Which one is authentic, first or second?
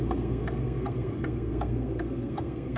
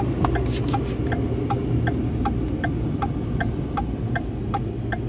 second